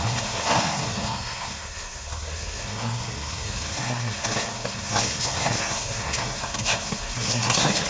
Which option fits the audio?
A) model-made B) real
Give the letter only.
A